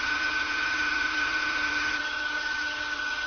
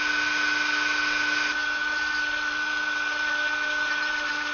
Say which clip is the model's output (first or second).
first